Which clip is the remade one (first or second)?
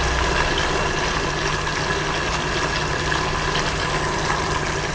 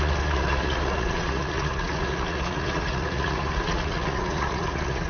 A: second